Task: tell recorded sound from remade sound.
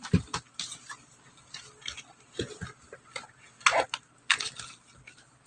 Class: recorded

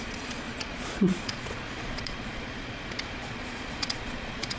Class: remade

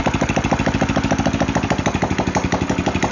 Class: recorded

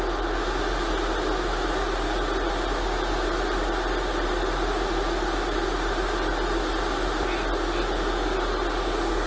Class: recorded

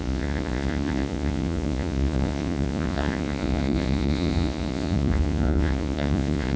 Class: remade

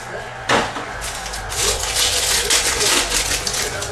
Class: remade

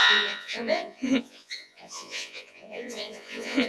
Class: remade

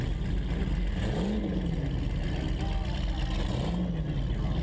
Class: recorded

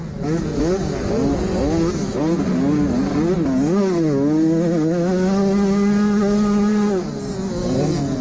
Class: recorded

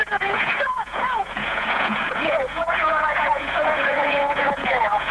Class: remade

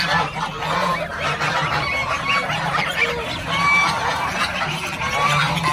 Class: recorded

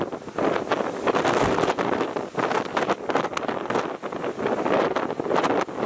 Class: recorded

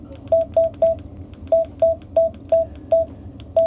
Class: recorded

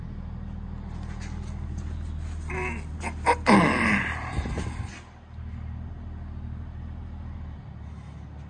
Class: recorded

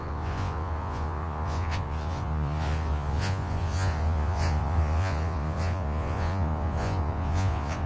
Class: remade